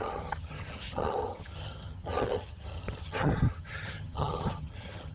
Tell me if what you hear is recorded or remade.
remade